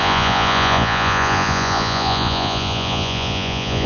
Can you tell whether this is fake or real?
fake